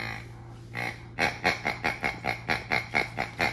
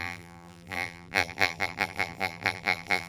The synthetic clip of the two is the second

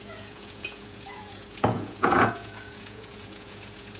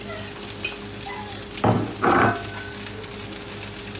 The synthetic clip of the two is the first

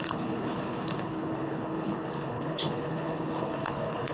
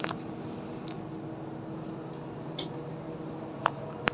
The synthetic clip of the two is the first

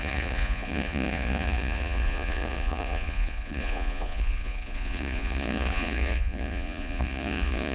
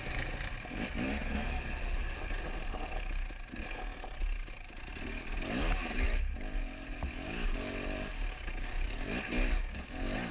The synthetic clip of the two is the first